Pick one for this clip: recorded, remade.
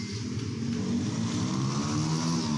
recorded